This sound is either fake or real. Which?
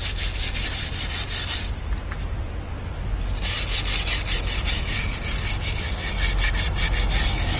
real